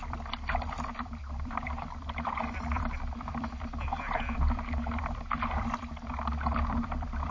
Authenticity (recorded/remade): remade